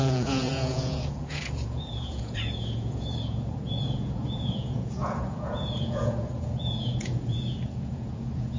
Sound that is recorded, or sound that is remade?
remade